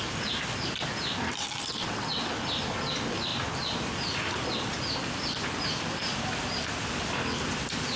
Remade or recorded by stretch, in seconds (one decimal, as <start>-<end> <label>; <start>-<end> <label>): 0.0-1.8 recorded; 1.8-2.3 remade; 2.3-8.0 recorded